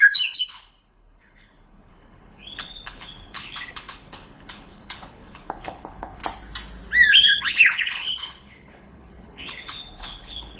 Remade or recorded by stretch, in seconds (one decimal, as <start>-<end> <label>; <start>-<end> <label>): 0.0-6.2 remade; 6.2-7.1 recorded; 7.1-10.6 remade